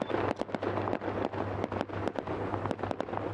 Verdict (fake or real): real